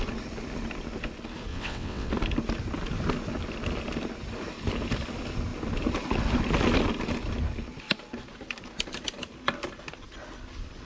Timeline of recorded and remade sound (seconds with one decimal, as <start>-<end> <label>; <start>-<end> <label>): 0.0-1.5 recorded; 1.5-2.1 remade; 2.1-10.8 recorded